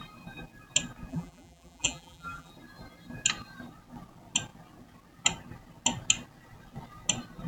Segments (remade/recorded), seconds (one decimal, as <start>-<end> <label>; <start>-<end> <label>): 0.0-1.1 recorded; 1.1-2.5 remade; 2.5-7.5 recorded